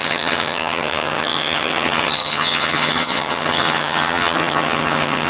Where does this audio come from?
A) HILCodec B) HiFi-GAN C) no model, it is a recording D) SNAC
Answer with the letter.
B